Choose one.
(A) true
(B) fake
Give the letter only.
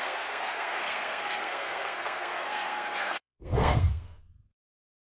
B